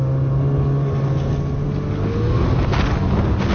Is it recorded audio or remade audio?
recorded